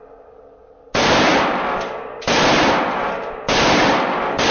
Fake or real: fake